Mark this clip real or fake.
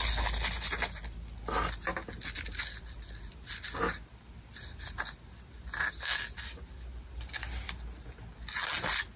real